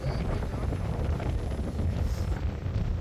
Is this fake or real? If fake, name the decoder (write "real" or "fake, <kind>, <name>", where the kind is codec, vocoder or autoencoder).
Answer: real